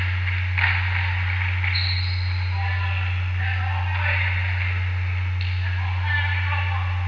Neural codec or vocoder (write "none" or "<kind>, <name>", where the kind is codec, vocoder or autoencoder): none